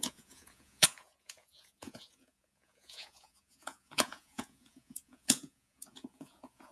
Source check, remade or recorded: remade